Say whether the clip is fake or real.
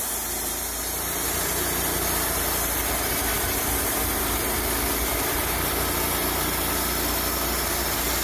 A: real